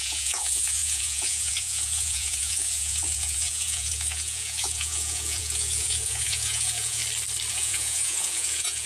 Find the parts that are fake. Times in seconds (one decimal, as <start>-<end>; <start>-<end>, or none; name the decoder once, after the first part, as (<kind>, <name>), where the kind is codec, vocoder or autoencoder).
0.0-7.0 (vocoder, Vocos); 7.5-8.9